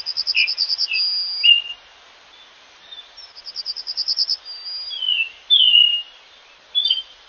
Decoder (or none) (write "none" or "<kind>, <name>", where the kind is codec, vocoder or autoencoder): none